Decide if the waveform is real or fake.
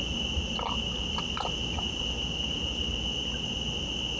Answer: real